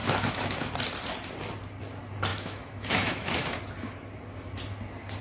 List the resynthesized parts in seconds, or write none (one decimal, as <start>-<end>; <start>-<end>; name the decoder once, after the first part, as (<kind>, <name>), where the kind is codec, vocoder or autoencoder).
0.0-0.7 (autoencoder, DAC-VAE); 2.3-3.6